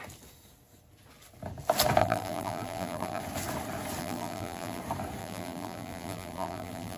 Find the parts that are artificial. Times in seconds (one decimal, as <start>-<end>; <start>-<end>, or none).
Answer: 2.0-3.2; 4.0-4.8; 5.2-7.0